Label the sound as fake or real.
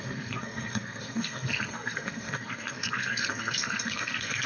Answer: fake